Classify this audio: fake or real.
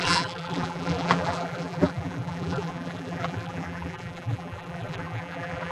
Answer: fake